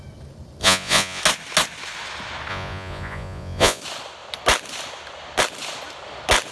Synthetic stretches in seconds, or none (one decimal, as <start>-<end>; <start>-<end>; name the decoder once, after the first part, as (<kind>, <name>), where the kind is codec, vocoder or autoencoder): 0.6-1.2 (vocoder, Vocos); 2.5-3.8